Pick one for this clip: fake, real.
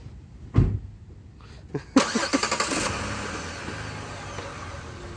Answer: real